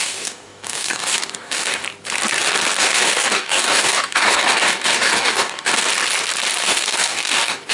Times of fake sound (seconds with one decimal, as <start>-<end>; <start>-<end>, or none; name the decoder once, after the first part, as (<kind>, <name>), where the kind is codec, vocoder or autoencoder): 0.0-1.8 (codec, DAC); 2.8-5.9; 6.6-7.7